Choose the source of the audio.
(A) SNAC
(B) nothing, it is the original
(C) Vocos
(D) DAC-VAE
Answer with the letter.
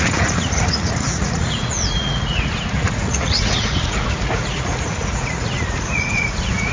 C